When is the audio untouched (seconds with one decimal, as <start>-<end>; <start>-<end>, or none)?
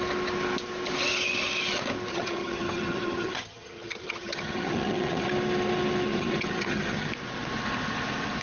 0.0-2.1; 5.3-6.1; 7.1-8.4